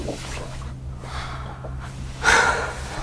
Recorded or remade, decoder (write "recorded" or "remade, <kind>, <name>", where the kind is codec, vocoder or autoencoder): recorded